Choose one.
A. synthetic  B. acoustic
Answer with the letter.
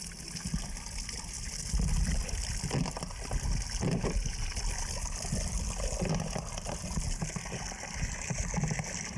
B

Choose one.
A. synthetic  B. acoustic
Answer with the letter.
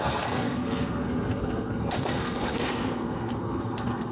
A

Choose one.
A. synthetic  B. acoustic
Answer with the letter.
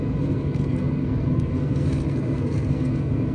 A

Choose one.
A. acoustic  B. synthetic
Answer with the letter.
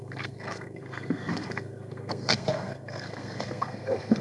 B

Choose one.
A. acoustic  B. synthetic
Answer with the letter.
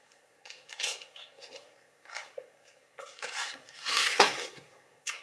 B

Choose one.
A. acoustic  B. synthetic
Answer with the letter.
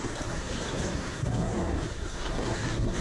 B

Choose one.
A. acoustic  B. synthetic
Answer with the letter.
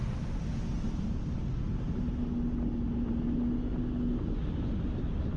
A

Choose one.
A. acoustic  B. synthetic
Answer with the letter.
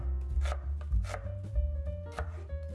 A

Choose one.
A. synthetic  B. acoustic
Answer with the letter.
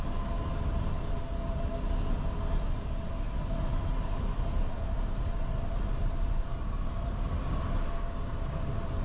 B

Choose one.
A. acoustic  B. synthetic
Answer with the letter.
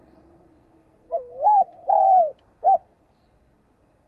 B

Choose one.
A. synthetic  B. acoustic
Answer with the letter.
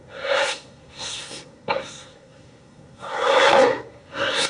A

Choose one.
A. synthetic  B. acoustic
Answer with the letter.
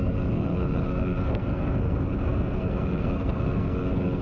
A